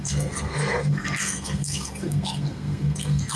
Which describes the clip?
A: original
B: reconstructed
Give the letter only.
B